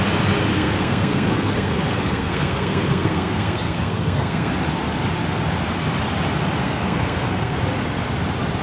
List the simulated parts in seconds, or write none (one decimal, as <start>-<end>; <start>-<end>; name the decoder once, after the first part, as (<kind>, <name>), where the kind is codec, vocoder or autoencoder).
0.5-4.5 (codec, SNAC); 6.6-7.6